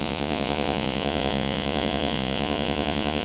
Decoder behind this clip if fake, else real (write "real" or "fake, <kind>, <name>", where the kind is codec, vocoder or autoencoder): fake, vocoder, Vocos